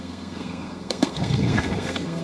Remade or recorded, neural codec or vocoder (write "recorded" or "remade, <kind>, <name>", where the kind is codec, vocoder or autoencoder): remade, codec, SNAC